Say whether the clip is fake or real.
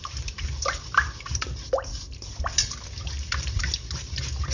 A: real